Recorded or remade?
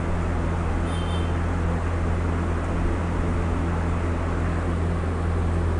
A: recorded